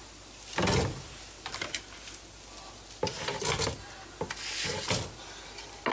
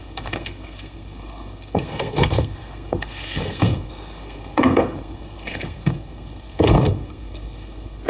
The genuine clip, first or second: first